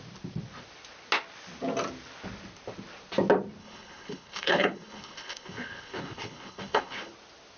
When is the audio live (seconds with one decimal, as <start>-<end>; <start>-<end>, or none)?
0.0-3.6; 7.1-7.6